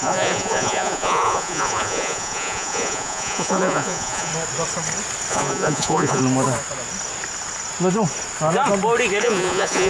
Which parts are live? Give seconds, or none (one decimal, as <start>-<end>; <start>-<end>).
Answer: 4.3-5.3; 6.2-9.2